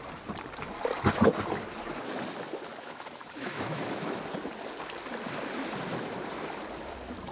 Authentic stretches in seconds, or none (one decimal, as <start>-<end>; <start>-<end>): 0.0-2.7; 4.2-7.3